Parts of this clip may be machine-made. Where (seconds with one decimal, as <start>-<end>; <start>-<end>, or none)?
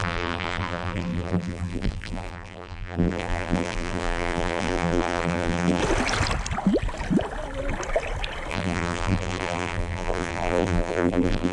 0.0-5.8; 8.5-11.5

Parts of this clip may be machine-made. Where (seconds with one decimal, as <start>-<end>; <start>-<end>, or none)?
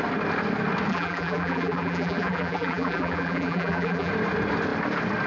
0.9-4.1